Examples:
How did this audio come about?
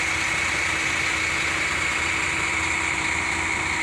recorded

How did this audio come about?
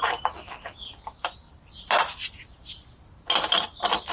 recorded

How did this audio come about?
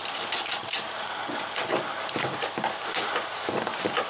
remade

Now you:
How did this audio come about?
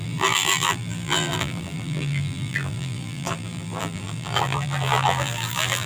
remade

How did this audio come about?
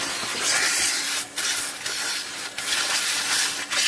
recorded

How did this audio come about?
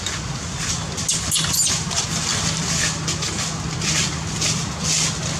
recorded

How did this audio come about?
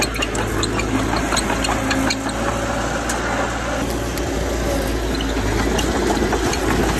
recorded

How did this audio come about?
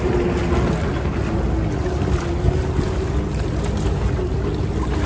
recorded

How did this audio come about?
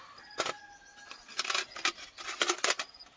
recorded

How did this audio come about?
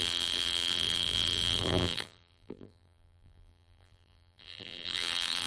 remade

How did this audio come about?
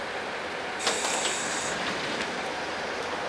recorded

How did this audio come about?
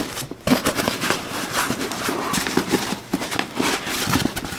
remade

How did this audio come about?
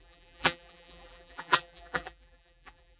remade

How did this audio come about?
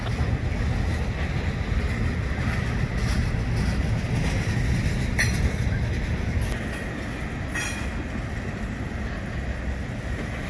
recorded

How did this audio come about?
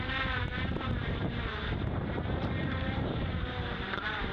remade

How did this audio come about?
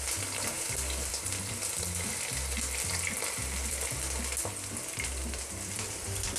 recorded